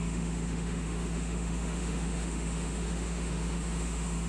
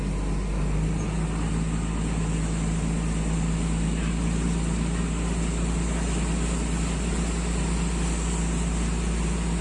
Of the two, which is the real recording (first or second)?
second